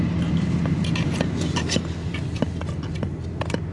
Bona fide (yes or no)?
yes